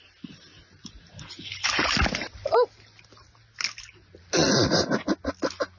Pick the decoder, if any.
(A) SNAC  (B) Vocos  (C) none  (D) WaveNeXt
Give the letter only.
C